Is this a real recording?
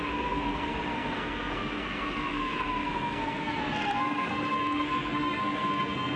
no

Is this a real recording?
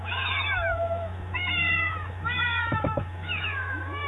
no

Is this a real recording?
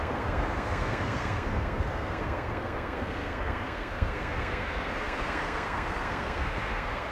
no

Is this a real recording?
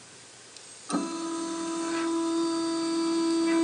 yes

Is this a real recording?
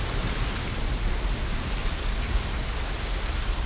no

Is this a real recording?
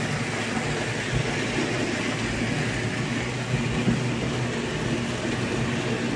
yes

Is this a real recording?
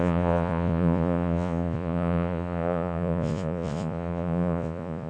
no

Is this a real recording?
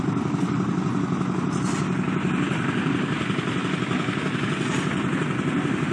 yes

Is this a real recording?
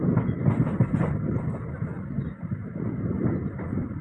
no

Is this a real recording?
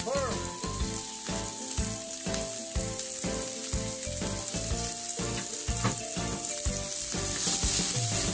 yes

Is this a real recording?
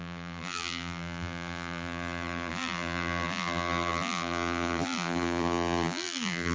no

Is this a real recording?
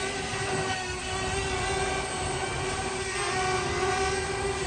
yes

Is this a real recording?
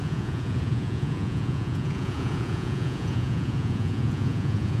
no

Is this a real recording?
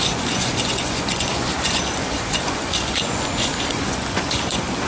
no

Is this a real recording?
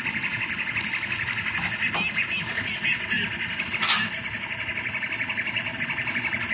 yes